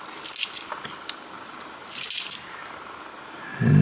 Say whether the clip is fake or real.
real